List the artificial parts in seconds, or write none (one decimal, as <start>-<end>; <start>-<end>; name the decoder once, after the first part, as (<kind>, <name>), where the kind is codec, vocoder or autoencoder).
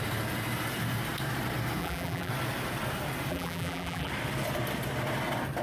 1.8-2.3 (vocoder, BigVGAN v2); 3.3-4.1